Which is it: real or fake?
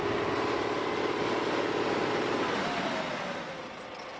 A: real